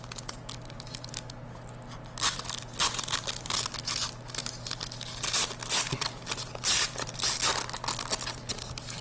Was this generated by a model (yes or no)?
no